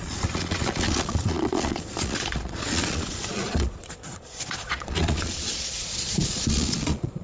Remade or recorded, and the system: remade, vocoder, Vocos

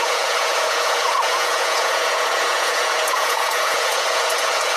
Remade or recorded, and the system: remade, vocoder, Vocos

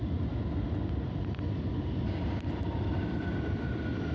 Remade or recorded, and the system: recorded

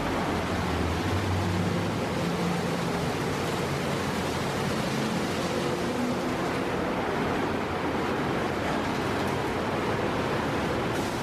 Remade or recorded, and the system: recorded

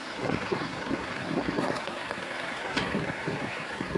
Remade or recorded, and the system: remade, codec, SNAC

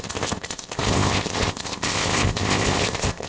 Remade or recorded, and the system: remade, codec, ZipCodec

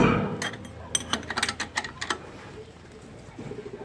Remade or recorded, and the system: recorded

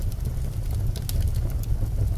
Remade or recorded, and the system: recorded